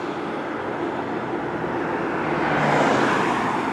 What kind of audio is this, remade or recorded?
recorded